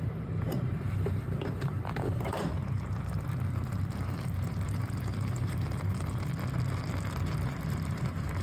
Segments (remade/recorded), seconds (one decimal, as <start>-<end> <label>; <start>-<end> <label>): 0.0-6.3 remade; 6.3-6.9 recorded; 6.9-8.4 remade